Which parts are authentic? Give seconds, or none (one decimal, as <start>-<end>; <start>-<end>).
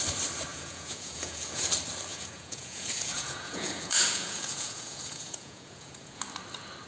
0.0-0.5; 1.7-2.1; 6.2-6.9